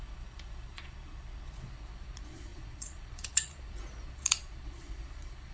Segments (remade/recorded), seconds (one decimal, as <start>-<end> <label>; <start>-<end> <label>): 0.0-5.5 remade